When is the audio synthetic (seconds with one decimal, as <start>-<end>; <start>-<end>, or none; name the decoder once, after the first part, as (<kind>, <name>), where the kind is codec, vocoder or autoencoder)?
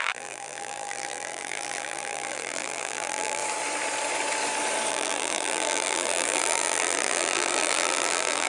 0.0-3.4 (vocoder, BigVGAN v2); 4.9-8.5